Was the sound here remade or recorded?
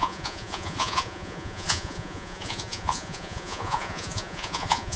remade